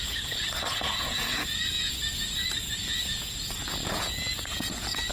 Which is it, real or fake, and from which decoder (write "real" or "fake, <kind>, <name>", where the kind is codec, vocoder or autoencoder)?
fake, vocoder, Vocos